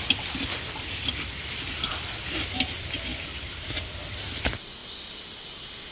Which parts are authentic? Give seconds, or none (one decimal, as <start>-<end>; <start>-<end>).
0.0-3.1; 3.8-5.9